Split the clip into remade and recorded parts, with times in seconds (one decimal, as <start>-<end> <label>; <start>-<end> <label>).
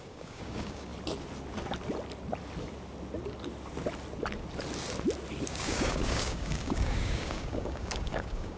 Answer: 0.0-0.9 remade; 0.9-5.5 recorded; 5.5-8.6 remade